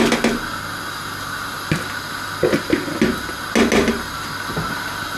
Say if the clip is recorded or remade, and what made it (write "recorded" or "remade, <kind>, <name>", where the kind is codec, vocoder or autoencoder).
recorded